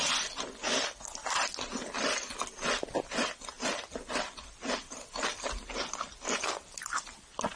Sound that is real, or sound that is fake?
real